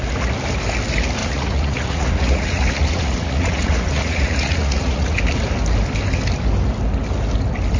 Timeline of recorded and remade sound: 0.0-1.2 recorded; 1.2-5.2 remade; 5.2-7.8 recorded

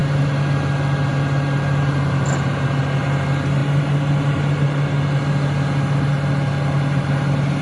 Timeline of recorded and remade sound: 0.0-7.6 recorded

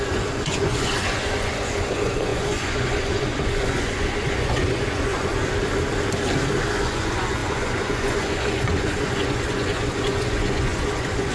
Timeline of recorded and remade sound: 0.0-5.3 remade; 5.3-6.7 recorded; 6.7-11.3 remade